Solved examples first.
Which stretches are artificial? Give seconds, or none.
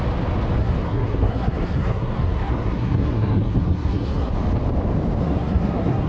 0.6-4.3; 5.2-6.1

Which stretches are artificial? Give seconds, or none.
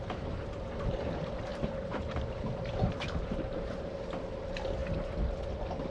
1.5-4.0